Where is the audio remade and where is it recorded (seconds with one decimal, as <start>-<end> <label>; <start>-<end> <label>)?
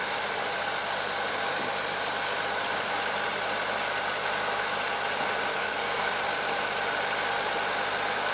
0.0-5.5 recorded; 5.5-6.1 remade; 6.1-8.3 recorded